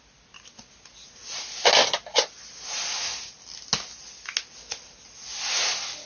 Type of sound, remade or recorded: recorded